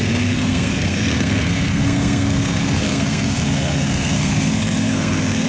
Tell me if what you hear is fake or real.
fake